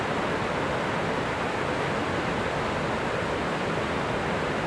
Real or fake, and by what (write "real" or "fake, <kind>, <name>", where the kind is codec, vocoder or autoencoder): real